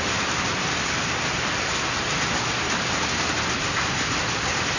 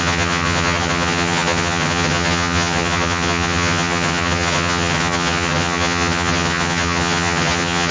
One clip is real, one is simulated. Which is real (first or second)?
first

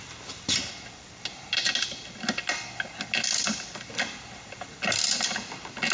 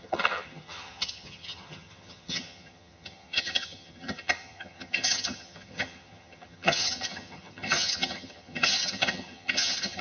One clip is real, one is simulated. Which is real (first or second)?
first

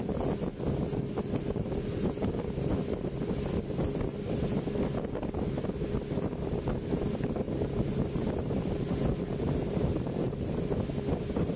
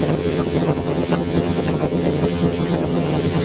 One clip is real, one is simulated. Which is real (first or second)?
first